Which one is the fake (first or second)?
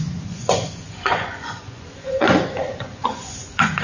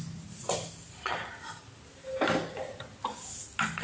first